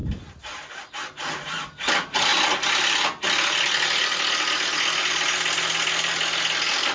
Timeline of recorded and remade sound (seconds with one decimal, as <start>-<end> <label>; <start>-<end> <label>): 0.0-6.9 recorded